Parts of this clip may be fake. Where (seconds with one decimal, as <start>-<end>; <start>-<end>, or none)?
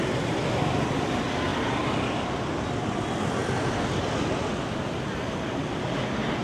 none